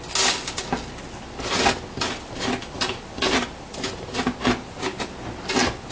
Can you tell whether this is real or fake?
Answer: real